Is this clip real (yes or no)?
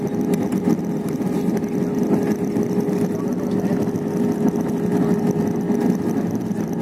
yes